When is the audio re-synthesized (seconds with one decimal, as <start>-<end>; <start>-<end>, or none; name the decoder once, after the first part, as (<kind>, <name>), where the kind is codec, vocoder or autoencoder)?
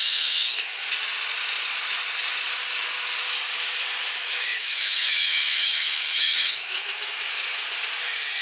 0.0-0.8 (autoencoder, DAC-VAE); 4.2-7.2